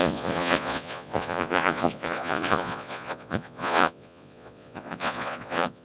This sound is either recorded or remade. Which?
remade